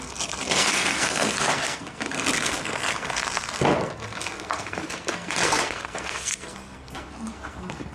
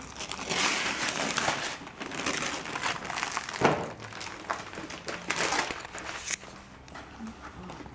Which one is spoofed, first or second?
first